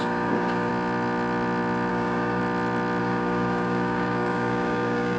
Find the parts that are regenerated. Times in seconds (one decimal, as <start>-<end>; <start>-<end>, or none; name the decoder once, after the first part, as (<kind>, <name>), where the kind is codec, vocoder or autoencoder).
0.0-0.7 (codec, DAC); 1.9-2.4; 3.0-5.2